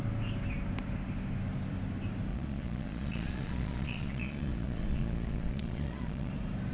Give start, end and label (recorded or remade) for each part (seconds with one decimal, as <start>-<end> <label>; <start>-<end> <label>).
0.0-2.3 recorded; 2.3-6.3 remade; 6.3-6.7 recorded